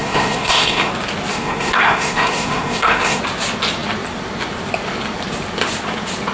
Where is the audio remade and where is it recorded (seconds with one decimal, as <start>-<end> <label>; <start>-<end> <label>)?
0.0-0.9 remade; 0.9-1.3 recorded; 1.3-3.2 remade; 3.2-6.3 recorded